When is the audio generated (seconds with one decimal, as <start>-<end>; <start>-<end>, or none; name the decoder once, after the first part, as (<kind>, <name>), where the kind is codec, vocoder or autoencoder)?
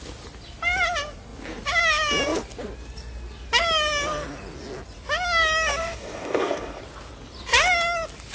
5.8-6.8 (codec, DAC)